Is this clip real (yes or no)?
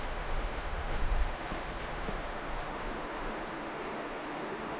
no